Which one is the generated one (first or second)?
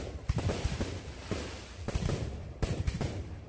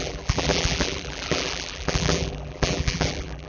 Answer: second